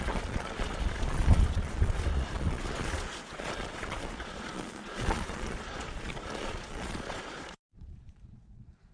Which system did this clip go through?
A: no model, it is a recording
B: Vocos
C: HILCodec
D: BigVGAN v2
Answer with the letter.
B